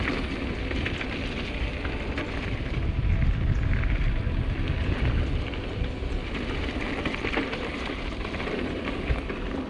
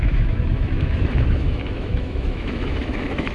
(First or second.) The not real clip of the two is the second